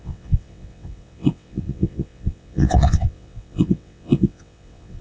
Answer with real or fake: fake